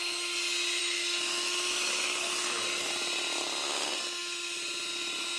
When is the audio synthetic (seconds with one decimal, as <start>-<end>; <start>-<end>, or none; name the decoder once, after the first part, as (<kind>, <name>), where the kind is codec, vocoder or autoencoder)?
0.8-2.9 (autoencoder, DAC-VAE)